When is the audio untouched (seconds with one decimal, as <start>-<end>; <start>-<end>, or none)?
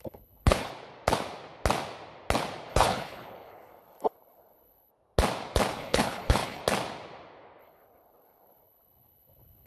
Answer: 0.7-2.7; 4.9-5.7; 6.6-7.6